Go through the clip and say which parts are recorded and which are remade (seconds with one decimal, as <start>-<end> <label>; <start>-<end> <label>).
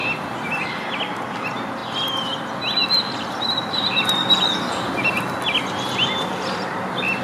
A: 0.0-7.2 recorded